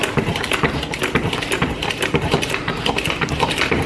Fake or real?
real